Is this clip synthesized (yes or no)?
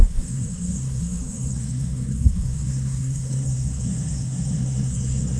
yes